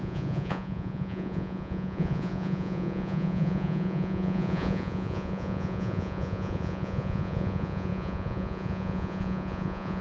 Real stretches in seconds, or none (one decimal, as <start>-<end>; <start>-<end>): none